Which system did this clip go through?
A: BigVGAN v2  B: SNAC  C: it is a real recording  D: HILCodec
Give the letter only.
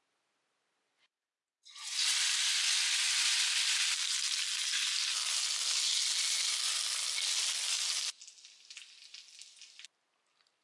C